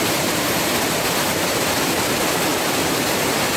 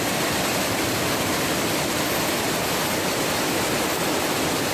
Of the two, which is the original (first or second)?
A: second